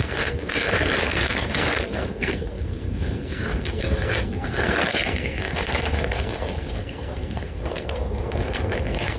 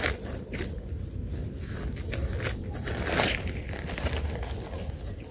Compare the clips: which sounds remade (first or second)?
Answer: first